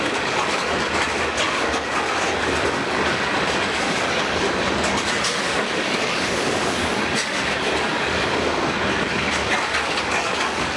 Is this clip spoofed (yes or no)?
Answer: yes